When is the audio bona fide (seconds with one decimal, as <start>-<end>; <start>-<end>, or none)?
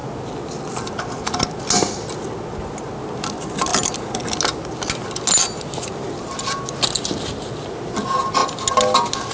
0.0-9.3